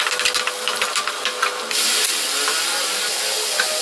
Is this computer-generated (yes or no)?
no